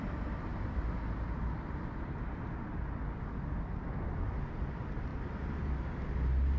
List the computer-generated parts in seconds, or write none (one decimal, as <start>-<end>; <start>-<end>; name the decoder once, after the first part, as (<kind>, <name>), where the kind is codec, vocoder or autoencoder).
0.0-0.5 (vocoder, BigVGAN v2); 4.5-5.1